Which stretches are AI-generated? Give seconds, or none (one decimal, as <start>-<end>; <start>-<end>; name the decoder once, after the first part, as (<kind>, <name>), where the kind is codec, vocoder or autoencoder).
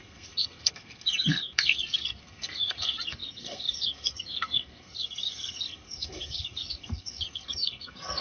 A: 0.0-8.2 (codec, SNAC)